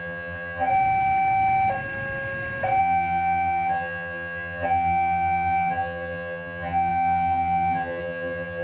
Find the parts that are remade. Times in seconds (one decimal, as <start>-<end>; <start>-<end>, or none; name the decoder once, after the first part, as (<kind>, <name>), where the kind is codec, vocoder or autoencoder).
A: 0.0-0.7 (vocoder, HiFi-GAN); 2.8-8.6